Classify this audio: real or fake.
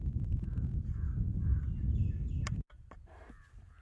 real